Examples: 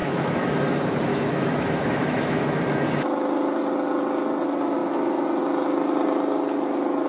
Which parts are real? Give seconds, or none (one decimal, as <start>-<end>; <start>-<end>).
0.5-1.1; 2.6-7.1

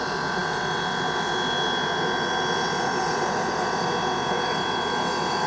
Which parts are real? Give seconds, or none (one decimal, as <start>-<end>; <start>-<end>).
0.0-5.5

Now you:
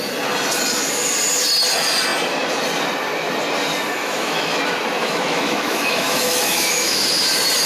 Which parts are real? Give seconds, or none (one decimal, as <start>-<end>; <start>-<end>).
0.0-4.0; 4.6-5.0; 7.0-7.7

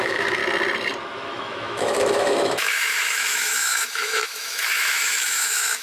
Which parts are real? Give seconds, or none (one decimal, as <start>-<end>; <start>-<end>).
0.4-1.0